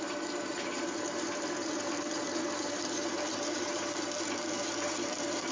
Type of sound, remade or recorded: remade